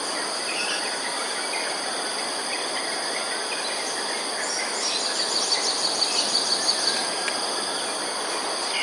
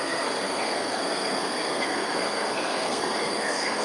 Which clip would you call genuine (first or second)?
first